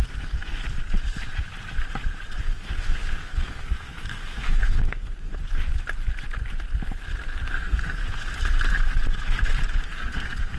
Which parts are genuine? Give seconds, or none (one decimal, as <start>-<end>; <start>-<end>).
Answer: 0.6-2.4; 5.3-7.5; 8.0-9.9